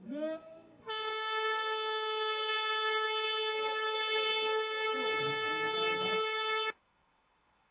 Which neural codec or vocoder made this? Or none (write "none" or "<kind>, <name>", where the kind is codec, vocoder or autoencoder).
autoencoder, DAC-VAE